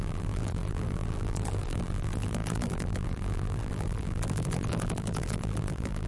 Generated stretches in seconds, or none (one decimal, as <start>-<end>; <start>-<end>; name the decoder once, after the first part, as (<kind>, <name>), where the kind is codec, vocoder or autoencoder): 0.0-6.1 (vocoder, BigVGAN v2)